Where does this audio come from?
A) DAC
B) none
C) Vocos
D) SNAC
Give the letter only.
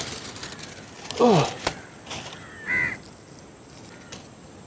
B